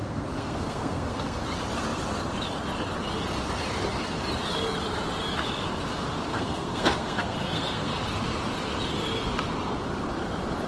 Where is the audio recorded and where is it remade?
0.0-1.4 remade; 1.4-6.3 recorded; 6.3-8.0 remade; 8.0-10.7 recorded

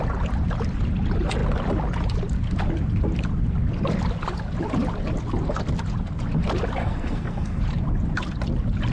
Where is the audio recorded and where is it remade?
0.0-6.8 recorded; 6.8-7.6 remade; 7.6-8.9 recorded

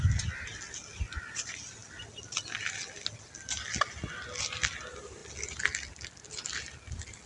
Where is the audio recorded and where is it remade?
0.0-7.3 recorded

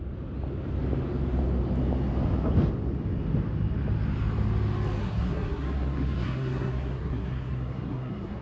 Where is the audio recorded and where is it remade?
0.0-5.0 recorded; 5.0-8.4 remade